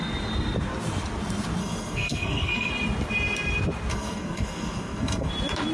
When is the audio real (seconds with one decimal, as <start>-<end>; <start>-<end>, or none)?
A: 0.0-1.6; 2.7-3.9; 5.3-5.7